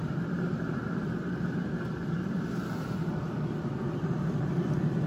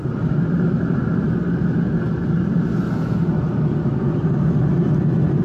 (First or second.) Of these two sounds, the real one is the second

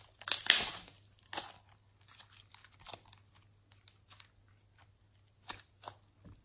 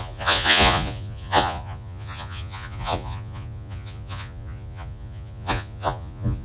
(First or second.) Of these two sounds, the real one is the first